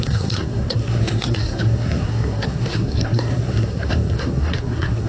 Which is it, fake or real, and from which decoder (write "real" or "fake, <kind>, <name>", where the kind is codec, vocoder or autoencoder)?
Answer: fake, codec, SNAC